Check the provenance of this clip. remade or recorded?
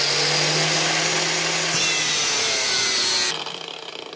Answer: recorded